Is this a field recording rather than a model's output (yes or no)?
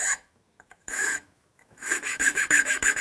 no